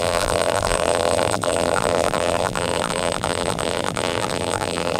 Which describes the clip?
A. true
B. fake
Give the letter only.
B